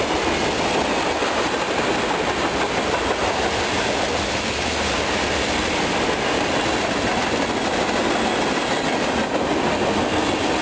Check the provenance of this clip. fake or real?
real